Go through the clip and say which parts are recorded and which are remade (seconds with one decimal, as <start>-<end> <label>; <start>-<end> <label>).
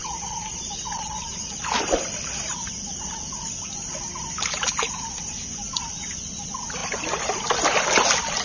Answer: 0.0-8.4 recorded